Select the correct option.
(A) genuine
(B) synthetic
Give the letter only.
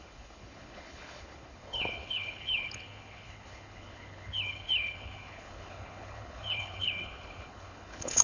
B